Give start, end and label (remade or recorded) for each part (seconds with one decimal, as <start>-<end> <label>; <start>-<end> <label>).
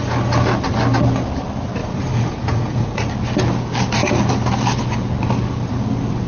0.0-1.8 recorded; 1.8-3.1 remade; 3.1-6.3 recorded